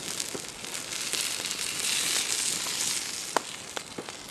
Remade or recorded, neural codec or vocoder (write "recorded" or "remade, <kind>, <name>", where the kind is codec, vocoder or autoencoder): recorded